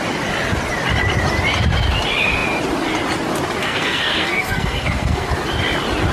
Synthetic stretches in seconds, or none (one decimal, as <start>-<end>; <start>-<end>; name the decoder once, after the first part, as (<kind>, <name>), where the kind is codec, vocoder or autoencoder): 3.6-5.3 (codec, SNAC)